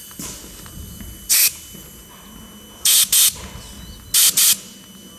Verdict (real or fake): real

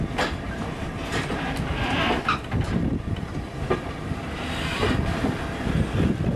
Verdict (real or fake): fake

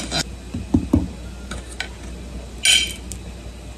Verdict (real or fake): real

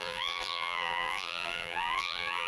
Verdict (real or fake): fake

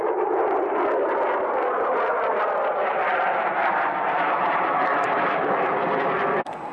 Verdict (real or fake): real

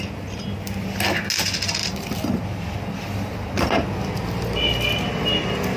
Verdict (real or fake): real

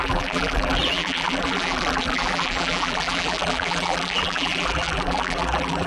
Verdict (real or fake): fake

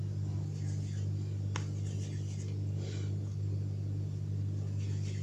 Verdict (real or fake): real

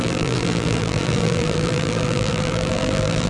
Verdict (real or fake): fake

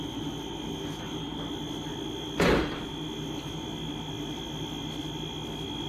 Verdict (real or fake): real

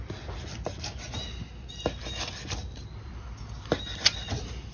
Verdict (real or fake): real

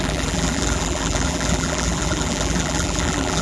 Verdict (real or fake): fake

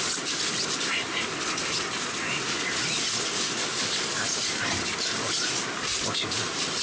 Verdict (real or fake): real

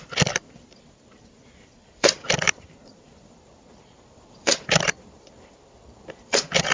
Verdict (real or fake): fake